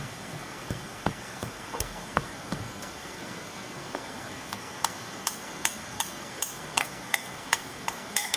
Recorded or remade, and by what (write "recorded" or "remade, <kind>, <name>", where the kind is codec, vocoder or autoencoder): remade, codec, SNAC